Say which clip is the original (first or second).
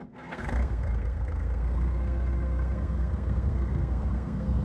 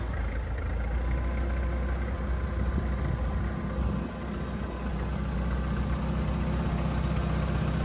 second